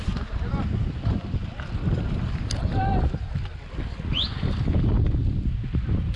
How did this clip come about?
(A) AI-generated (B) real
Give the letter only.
B